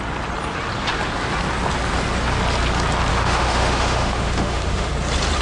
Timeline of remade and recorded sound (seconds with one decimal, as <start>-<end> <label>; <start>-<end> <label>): 0.0-3.1 recorded; 3.1-4.9 remade; 4.9-5.4 recorded